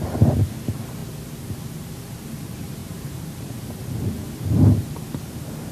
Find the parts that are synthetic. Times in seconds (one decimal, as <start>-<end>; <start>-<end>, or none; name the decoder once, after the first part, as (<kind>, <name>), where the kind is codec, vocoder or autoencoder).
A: 2.8-3.5 (vocoder, BigVGAN v2)